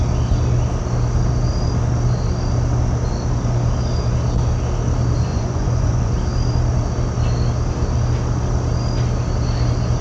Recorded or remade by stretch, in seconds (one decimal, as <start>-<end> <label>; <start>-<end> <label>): 0.0-5.3 recorded; 5.3-6.1 remade; 6.1-10.0 recorded